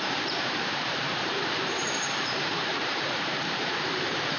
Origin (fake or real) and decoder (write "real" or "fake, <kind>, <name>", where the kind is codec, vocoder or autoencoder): fake, vocoder, BigVGAN v2